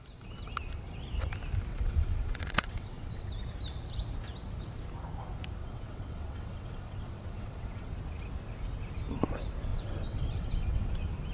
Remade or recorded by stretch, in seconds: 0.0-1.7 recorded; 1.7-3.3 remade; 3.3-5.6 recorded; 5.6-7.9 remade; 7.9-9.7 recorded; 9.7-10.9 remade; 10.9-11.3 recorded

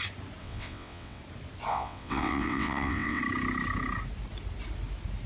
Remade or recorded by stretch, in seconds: 0.0-0.4 recorded; 0.4-1.2 remade; 1.2-1.7 recorded; 1.7-3.2 remade; 3.2-5.3 recorded

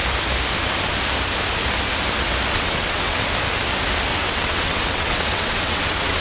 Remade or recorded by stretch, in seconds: 0.0-2.5 recorded; 2.5-3.2 remade; 3.2-4.1 recorded; 4.1-6.2 remade

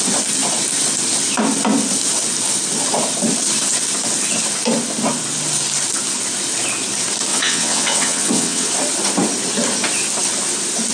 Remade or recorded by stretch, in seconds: 0.0-7.3 recorded; 7.3-8.7 remade; 8.7-10.9 recorded

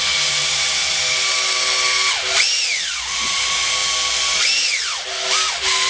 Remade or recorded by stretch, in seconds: 0.0-5.9 recorded

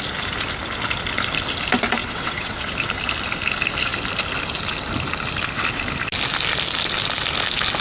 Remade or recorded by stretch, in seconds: 0.0-2.0 recorded; 2.0-2.7 remade; 2.7-7.8 recorded